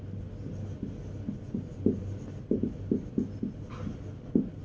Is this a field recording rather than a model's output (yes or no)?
yes